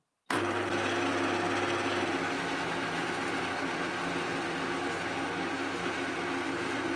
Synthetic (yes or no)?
no